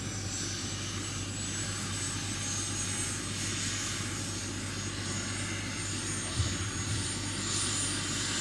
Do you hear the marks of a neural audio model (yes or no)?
no